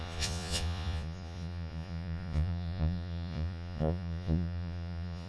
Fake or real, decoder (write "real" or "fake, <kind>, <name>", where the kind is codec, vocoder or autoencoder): fake, vocoder, Vocos